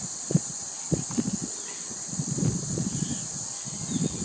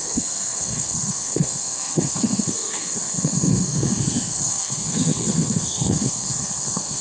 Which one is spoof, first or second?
second